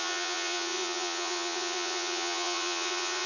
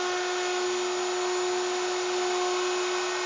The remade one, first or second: first